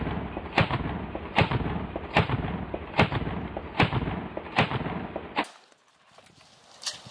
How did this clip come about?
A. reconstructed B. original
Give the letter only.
B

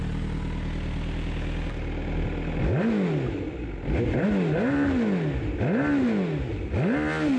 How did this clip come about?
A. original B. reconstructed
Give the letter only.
A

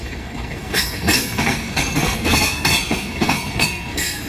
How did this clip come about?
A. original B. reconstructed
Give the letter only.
B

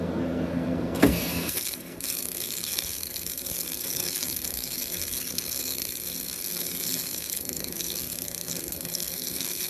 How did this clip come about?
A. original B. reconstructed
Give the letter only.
B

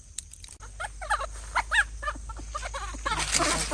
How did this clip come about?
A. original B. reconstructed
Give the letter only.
A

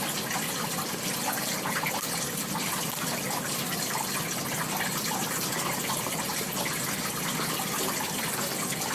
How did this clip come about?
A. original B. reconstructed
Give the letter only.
A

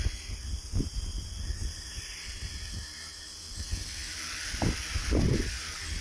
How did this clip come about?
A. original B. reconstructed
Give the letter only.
A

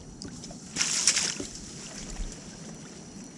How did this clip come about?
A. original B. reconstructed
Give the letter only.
A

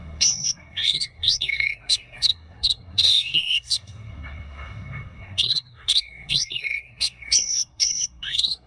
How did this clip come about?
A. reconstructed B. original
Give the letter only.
A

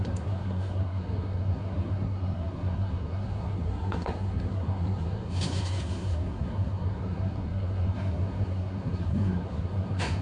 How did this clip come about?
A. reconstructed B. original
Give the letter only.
A